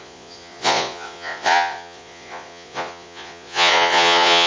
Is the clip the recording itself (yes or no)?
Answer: no